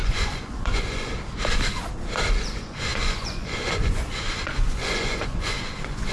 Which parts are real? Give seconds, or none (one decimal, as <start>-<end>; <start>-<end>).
1.1-2.3